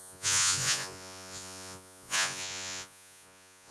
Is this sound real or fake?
fake